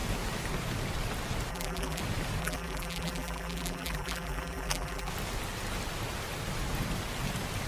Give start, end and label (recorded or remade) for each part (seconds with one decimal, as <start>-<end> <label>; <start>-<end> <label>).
0.0-1.5 recorded; 1.5-2.0 remade; 2.0-2.4 recorded; 2.4-5.1 remade; 5.1-7.7 recorded